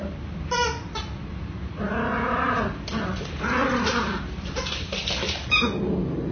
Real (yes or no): yes